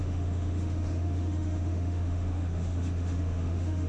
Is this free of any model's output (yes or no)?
no